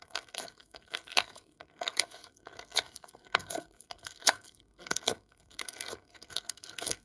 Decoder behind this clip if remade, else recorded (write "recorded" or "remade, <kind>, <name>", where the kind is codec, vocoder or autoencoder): remade, codec, SNAC